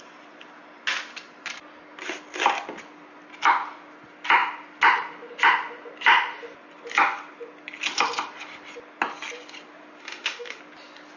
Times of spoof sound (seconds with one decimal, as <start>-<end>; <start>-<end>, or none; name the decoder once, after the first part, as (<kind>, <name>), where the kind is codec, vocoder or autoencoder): 10.0-10.6 (autoencoder, DAC-VAE)